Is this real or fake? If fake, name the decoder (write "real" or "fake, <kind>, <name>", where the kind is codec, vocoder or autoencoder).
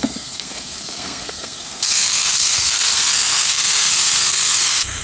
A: fake, codec, SNAC